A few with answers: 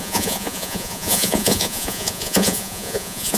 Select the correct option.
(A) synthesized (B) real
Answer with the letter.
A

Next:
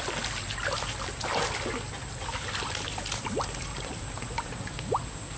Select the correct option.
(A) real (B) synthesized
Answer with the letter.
A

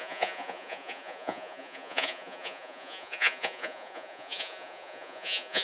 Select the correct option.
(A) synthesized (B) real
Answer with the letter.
A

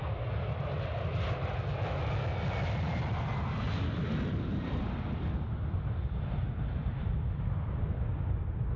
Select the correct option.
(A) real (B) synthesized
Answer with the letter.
A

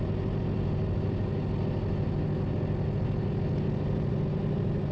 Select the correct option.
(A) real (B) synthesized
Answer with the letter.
A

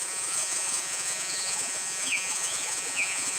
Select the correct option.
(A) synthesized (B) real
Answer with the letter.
A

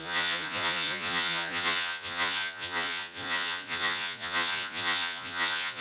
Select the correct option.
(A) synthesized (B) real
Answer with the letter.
A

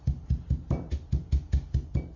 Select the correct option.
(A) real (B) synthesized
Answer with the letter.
A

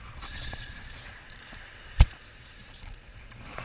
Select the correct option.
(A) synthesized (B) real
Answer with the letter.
A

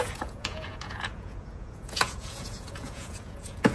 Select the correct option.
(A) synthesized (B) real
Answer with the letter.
A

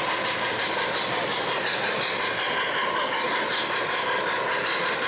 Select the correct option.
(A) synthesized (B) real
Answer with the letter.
B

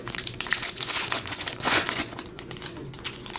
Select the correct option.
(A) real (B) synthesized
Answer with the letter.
B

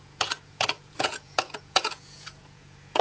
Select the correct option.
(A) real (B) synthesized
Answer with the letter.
B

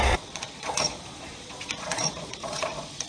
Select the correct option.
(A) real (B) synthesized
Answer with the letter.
B